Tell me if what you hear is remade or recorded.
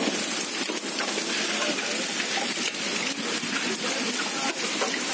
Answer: recorded